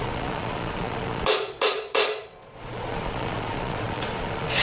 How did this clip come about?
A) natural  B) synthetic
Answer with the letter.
B